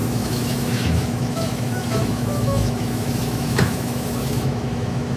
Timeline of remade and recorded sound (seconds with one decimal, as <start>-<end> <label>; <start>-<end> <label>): 0.0-5.2 remade